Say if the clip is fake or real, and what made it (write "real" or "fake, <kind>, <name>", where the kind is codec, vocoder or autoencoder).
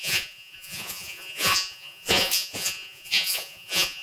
fake, vocoder, Vocos